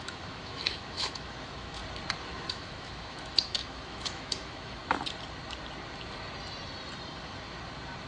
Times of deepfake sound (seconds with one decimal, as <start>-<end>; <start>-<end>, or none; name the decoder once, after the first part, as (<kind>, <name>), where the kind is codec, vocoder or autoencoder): 0.0-1.8 (autoencoder, DAC-VAE); 2.5-4.8